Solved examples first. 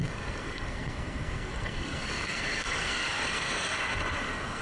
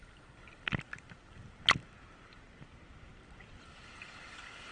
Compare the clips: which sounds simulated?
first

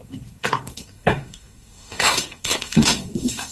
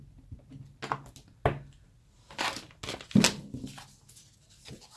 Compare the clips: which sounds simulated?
first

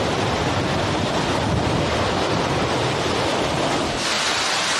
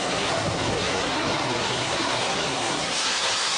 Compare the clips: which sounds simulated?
second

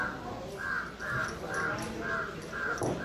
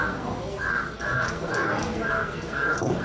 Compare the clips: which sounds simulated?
second